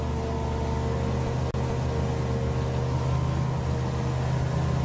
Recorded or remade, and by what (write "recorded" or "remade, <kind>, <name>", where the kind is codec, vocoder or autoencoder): recorded